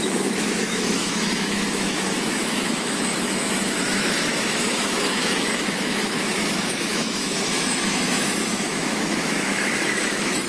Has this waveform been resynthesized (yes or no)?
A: yes